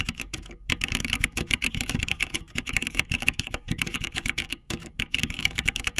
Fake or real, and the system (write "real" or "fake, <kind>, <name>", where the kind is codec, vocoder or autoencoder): fake, codec, DAC